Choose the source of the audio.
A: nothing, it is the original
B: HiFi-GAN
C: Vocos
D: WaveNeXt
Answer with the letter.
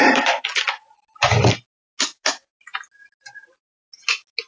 A